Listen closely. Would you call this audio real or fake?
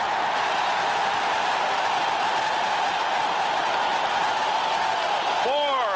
real